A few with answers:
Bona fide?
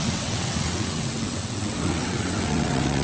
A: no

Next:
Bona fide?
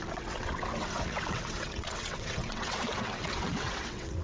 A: no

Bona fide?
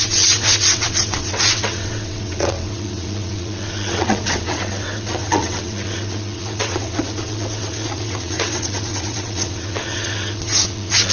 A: no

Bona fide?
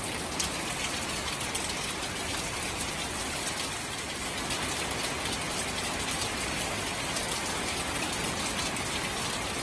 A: yes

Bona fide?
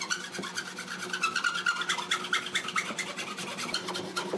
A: yes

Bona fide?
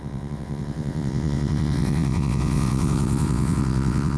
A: no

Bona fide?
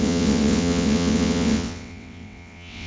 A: no